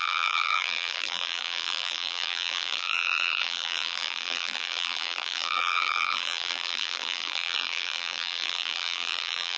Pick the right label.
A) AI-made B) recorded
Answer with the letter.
A